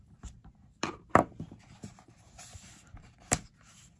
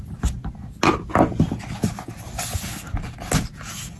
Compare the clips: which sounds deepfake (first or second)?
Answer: first